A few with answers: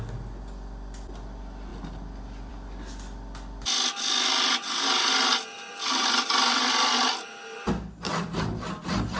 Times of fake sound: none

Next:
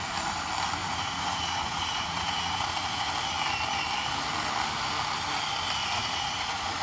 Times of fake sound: 0.8-3.1; 5.8-6.8